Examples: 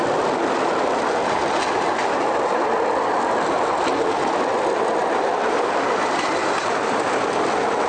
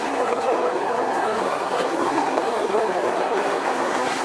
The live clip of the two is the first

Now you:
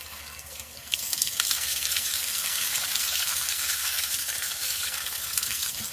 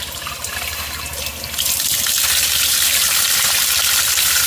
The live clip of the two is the second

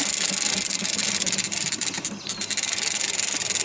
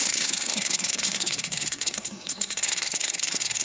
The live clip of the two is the first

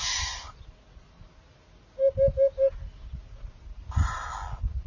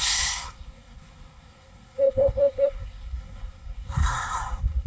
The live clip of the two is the first